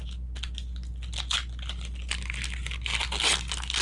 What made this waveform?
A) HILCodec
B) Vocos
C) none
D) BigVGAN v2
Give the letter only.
C